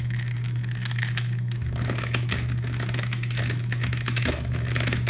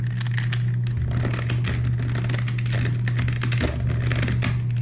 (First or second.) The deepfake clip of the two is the first